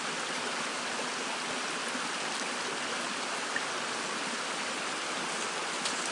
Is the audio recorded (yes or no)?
yes